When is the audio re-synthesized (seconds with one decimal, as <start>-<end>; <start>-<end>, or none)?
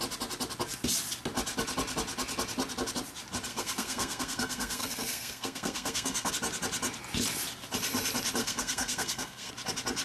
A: 3.5-6.3; 8.4-9.5